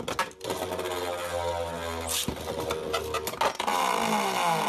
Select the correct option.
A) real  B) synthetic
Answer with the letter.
A